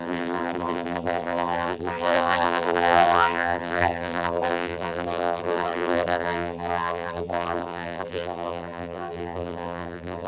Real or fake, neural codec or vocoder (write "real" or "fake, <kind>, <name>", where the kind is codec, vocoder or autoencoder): fake, vocoder, BigVGAN v2